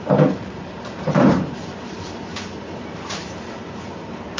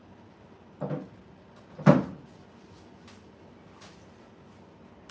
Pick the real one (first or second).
second